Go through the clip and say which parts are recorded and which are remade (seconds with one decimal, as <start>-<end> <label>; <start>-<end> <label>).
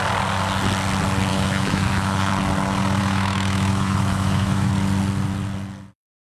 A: 0.0-1.3 recorded; 1.3-2.3 remade; 2.3-3.0 recorded; 3.0-4.7 remade; 4.7-6.4 recorded